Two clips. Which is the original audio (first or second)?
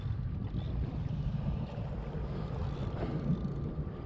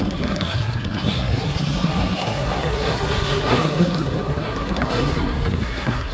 first